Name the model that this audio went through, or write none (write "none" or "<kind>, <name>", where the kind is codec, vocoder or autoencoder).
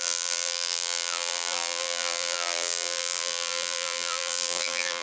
vocoder, BigVGAN v2